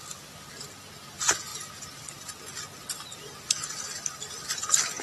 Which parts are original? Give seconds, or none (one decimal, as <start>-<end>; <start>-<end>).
0.0-5.0